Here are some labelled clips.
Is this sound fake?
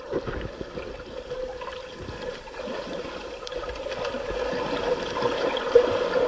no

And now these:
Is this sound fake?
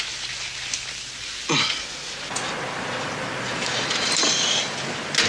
no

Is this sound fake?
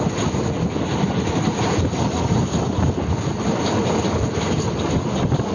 no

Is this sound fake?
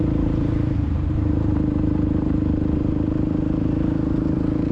yes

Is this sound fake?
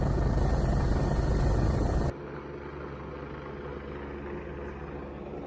no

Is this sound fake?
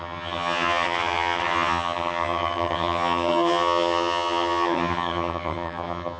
yes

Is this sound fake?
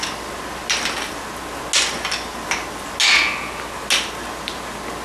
no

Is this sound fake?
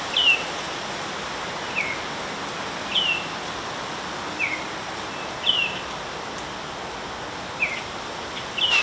no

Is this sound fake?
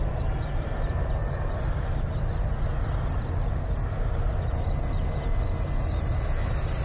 no